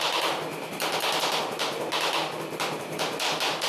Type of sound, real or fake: real